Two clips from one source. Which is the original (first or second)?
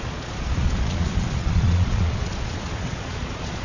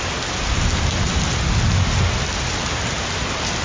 second